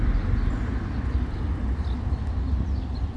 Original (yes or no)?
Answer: yes